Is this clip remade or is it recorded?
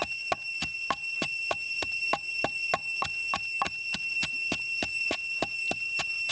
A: recorded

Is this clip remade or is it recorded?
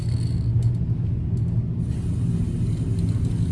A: recorded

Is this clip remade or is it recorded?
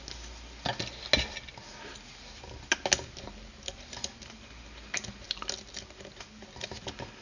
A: recorded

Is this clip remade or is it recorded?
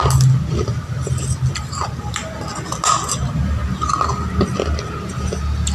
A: recorded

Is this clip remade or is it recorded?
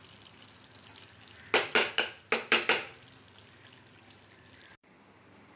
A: recorded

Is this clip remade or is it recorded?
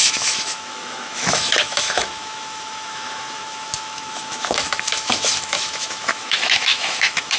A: remade